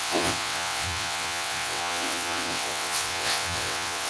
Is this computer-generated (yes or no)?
yes